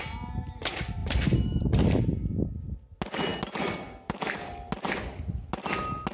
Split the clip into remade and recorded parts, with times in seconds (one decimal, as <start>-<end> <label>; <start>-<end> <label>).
0.0-1.0 recorded; 1.0-1.6 remade; 1.6-6.1 recorded